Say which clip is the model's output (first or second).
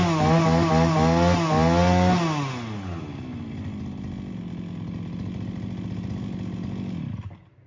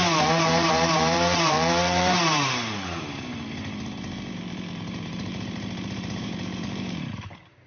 second